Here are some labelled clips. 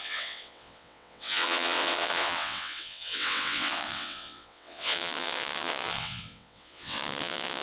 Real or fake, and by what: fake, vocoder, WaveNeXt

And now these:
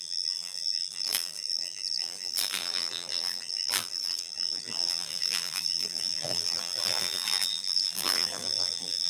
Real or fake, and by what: fake, vocoder, BigVGAN v2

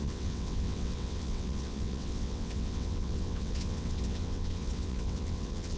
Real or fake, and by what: fake, vocoder, WaveNeXt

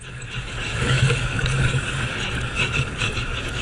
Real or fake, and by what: fake, codec, DAC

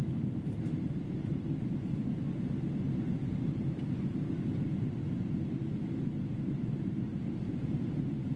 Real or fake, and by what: fake, vocoder, BigVGAN v2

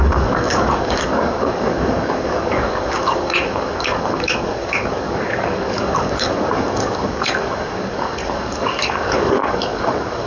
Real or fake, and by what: fake, codec, DAC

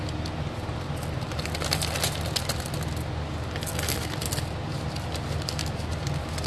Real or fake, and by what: real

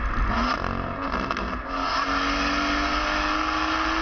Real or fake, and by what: real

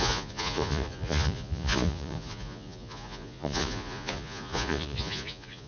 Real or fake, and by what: fake, vocoder, Vocos